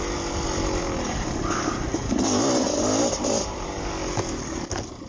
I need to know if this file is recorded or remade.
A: recorded